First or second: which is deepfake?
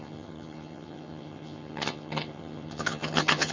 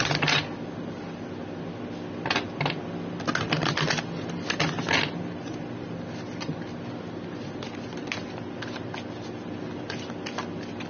first